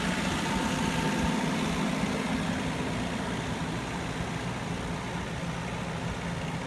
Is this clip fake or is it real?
real